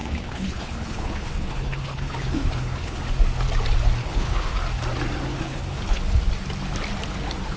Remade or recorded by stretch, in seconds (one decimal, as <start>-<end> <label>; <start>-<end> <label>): 0.0-3.0 remade; 3.0-4.0 recorded; 4.0-4.5 remade; 4.5-5.3 recorded; 5.3-6.0 remade; 6.0-7.6 recorded